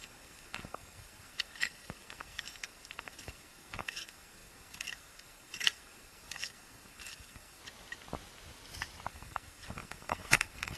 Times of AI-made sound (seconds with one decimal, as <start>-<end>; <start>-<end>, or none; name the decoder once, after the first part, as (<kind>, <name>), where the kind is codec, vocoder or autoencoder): 0.0-7.6 (codec, SNAC); 9.1-10.8